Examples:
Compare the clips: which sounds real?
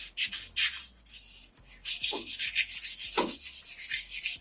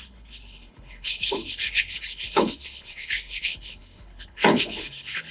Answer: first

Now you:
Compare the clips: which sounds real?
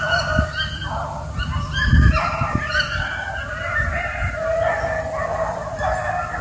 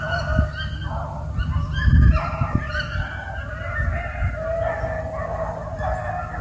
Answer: second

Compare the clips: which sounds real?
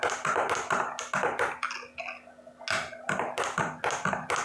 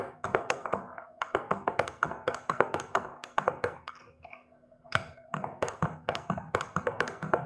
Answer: first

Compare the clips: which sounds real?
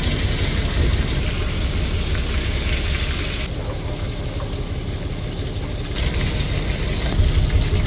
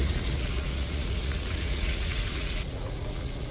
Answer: first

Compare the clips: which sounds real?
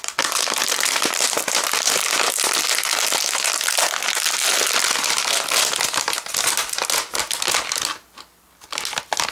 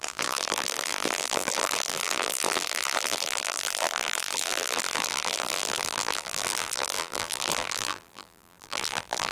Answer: first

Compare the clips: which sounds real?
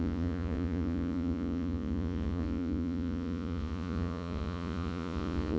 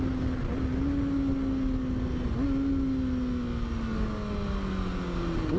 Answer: second